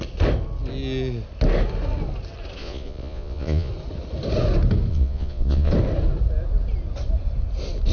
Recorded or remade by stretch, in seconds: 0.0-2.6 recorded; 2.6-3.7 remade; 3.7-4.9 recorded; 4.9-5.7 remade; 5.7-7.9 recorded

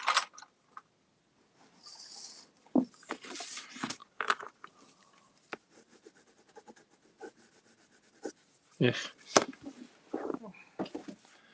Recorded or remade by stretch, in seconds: 0.0-11.5 recorded

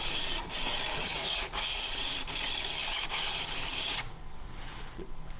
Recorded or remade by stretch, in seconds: 0.0-1.1 recorded; 1.1-1.9 remade; 1.9-5.4 recorded